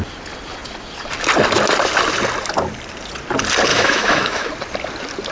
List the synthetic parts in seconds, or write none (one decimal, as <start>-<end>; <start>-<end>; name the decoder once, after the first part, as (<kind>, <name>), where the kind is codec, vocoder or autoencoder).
3.7-4.5 (autoencoder, DAC-VAE)